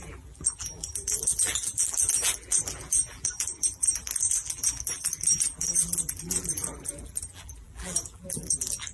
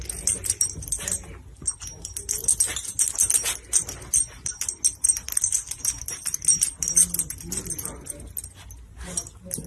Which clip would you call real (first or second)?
second